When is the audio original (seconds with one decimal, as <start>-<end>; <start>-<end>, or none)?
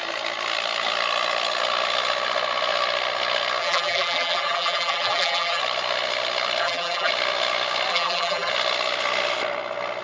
0.0-3.6; 5.6-6.6; 7.1-7.9; 8.5-10.0